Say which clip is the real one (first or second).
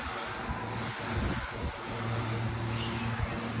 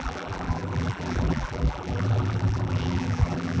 first